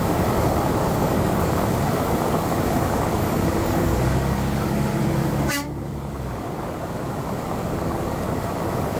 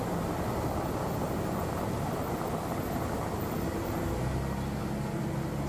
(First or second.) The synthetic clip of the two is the first